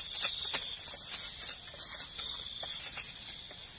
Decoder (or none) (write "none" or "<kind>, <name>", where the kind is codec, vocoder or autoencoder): none